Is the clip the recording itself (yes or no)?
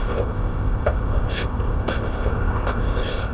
no